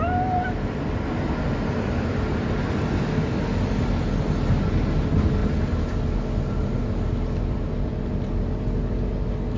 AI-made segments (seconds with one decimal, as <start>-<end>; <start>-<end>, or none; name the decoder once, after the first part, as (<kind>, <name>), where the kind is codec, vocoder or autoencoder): none